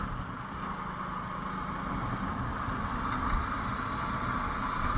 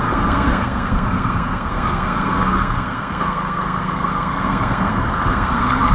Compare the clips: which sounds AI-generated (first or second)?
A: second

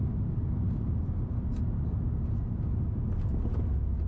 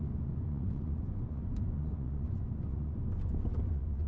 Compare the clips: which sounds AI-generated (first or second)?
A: second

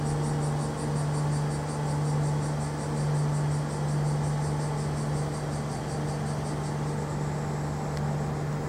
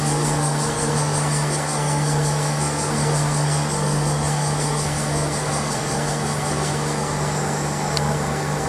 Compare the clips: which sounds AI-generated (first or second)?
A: second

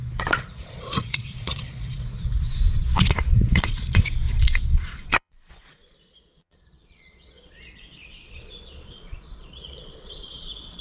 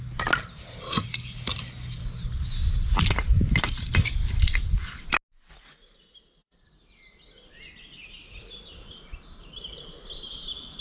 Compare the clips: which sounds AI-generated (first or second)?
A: first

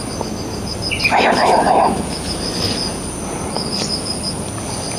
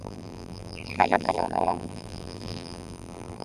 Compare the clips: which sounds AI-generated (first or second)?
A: second